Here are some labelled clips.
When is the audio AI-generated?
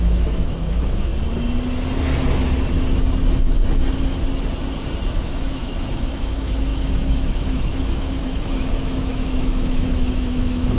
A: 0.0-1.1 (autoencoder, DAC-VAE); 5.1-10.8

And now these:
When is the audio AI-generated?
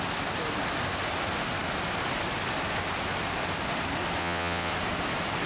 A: 4.2-4.7 (vocoder, WaveNeXt)